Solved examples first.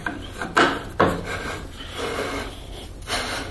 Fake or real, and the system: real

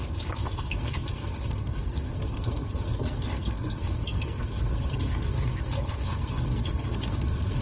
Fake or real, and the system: fake, codec, SNAC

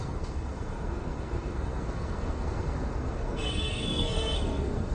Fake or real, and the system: fake, codec, SNAC